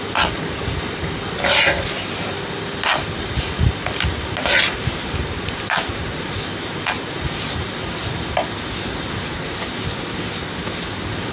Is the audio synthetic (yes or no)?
no